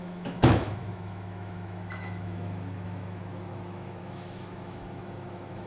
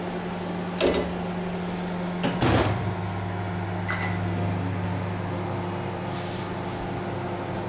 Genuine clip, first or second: second